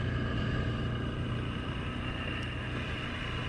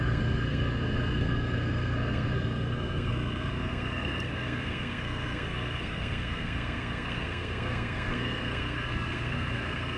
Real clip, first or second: first